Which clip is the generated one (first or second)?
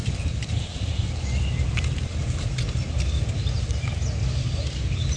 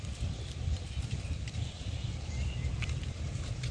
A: second